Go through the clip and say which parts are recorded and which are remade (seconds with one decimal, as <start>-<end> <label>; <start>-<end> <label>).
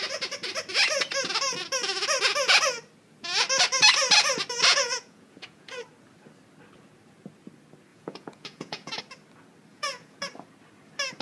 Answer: 0.0-4.7 recorded; 4.7-5.8 remade; 5.8-7.9 recorded; 7.9-9.0 remade; 9.0-9.7 recorded; 9.7-10.2 remade; 10.2-11.2 recorded